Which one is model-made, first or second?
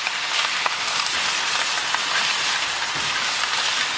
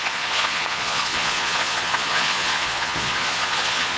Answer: second